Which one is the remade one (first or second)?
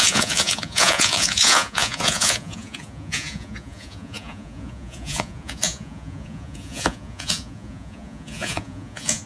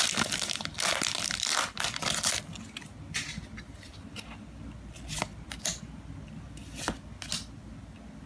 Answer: first